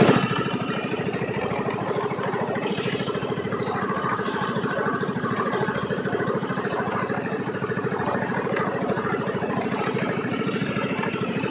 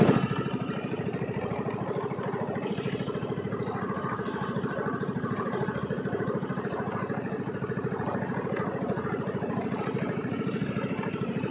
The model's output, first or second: first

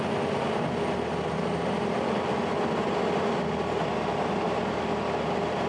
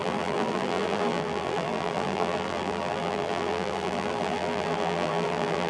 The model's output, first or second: second